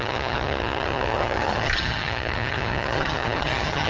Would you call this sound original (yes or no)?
no